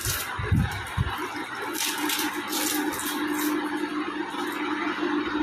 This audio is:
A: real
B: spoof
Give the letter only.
A